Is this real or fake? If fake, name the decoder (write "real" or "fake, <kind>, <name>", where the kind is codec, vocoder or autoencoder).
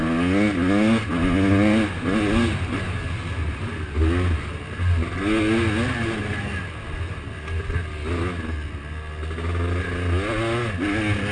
real